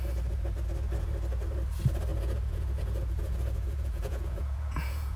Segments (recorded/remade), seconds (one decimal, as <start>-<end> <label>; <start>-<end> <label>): 0.0-2.1 recorded; 2.1-5.2 remade